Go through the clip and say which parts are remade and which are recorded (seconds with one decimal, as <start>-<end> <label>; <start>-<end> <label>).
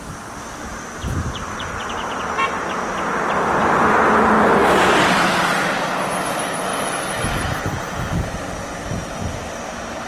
0.0-6.7 recorded; 6.7-7.6 remade; 7.6-10.1 recorded